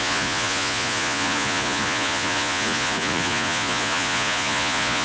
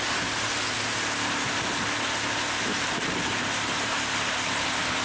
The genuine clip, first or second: second